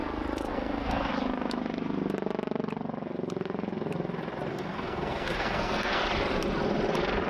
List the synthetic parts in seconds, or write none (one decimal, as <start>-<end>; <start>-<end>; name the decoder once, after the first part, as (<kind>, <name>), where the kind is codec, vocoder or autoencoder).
0.5-1.1 (codec, SNAC); 4.5-6.0